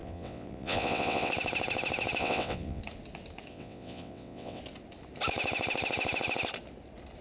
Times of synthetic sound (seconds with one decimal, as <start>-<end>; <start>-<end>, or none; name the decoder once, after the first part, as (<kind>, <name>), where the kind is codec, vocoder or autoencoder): 0.0-1.3 (vocoder, WaveNeXt); 2.2-2.8; 3.5-4.6